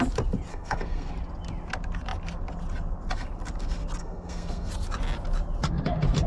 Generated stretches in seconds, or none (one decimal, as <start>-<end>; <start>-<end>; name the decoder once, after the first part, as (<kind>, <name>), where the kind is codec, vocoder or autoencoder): 0.5-1.1 (codec, SNAC); 4.0-4.7